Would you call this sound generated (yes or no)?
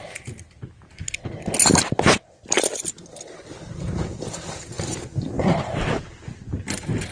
no